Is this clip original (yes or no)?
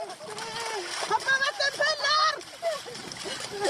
yes